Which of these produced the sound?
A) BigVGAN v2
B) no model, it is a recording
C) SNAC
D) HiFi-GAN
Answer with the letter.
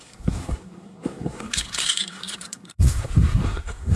C